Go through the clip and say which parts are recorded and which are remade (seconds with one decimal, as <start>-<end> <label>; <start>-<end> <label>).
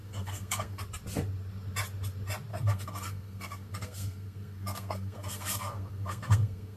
0.0-0.8 remade; 0.8-2.5 recorded; 2.5-6.8 remade